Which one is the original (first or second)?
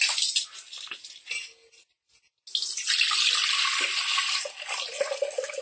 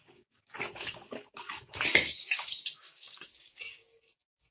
first